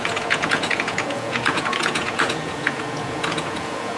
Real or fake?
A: fake